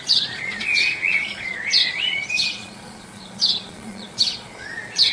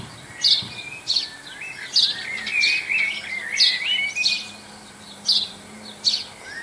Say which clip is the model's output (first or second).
first